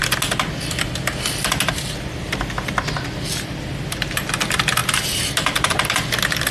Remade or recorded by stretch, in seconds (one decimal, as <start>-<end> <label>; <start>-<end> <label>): 0.0-4.8 recorded; 4.8-5.7 remade; 5.7-6.5 recorded